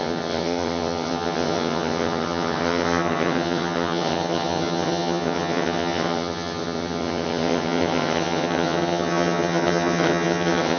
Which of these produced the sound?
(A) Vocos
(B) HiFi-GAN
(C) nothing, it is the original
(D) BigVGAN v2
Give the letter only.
B